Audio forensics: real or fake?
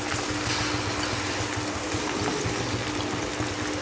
real